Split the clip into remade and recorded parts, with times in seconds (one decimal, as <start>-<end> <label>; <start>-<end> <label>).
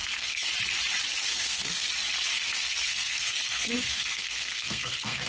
0.0-0.5 remade; 0.5-1.2 recorded; 1.2-1.9 remade; 1.9-2.3 recorded; 2.3-5.3 remade